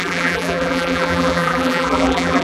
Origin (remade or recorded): remade